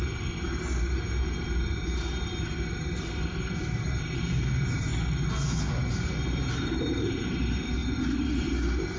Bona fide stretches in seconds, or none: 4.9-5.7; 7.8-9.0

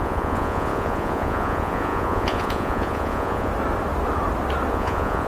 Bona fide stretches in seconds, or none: 3.5-4.7

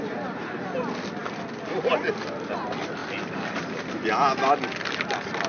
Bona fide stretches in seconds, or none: 0.0-3.0; 4.0-5.5

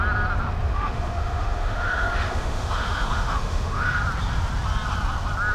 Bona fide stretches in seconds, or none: 0.0-0.7; 4.0-5.5

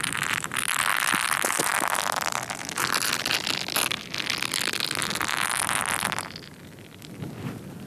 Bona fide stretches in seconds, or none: 0.0-7.9

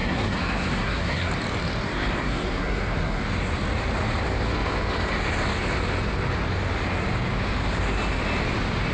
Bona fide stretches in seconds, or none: 1.3-2.2; 3.2-8.9

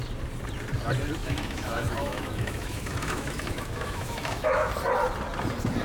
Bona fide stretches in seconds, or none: 0.0-1.2; 4.7-5.8